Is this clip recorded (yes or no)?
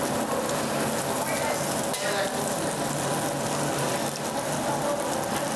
yes